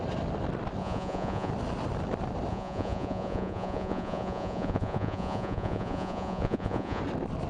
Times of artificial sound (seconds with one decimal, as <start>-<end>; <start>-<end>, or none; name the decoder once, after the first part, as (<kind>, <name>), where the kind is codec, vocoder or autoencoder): 0.8-1.5 (vocoder, Vocos); 2.5-7.0